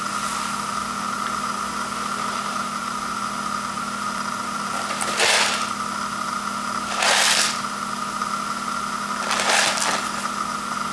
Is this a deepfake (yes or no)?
no